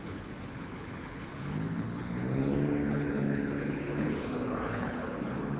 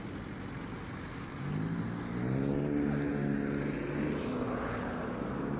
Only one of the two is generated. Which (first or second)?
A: first